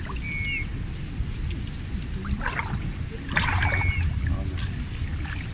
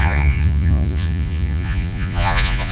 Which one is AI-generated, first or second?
second